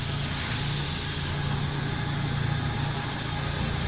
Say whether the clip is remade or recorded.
recorded